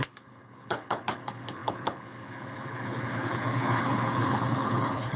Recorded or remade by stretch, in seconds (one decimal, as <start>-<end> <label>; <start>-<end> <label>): 0.0-5.2 remade